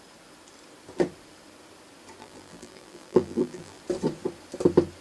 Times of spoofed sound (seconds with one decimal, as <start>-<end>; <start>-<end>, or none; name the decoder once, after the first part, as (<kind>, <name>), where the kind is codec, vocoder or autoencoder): 2.2-3.8 (vocoder, BigVGAN v2)